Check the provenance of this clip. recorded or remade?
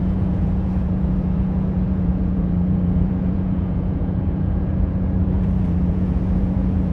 remade